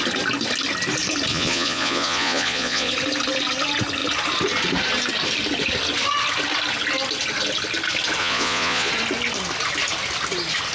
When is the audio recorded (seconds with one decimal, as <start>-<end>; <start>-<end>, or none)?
0.0-1.3; 2.9-8.2; 8.9-10.7